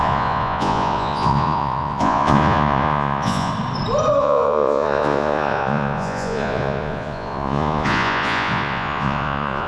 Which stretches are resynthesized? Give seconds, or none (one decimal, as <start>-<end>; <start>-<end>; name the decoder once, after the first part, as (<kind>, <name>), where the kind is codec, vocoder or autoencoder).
0.0-3.5 (vocoder, Vocos); 4.2-9.7